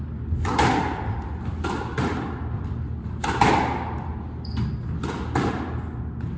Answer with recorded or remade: recorded